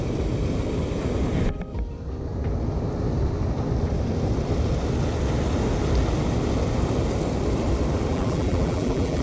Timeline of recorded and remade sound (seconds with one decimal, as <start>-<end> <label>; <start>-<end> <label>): 0.0-8.1 recorded; 8.1-9.2 remade